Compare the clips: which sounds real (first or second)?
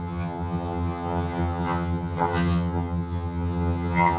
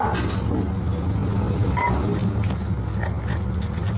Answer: second